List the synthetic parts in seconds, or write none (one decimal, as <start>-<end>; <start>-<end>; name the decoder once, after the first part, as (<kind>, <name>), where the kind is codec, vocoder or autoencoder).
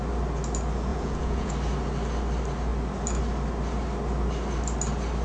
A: 0.9-1.5 (vocoder, Vocos)